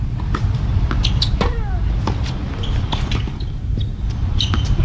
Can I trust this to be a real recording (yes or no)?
yes